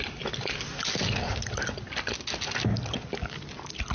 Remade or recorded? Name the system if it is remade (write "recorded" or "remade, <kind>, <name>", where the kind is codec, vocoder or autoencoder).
recorded